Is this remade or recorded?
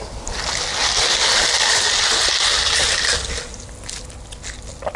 recorded